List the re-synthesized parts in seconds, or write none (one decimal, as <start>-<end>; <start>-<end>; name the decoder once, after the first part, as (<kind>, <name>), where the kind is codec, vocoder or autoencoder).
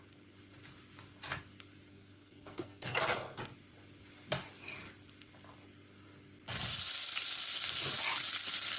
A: 1.9-3.4 (codec, SNAC)